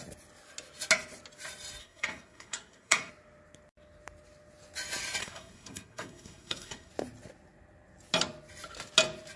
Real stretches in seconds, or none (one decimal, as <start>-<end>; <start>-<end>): 0.0-1.8; 3.1-5.2; 6.9-9.4